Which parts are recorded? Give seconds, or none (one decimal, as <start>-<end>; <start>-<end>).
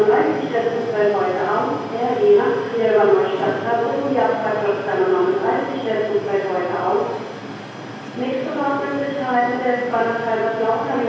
0.0-8.9; 9.9-11.1